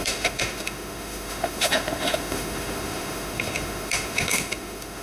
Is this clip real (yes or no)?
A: no